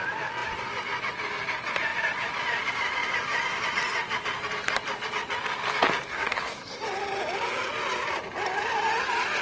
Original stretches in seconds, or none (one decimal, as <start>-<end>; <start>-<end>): 0.0-6.1; 6.8-9.4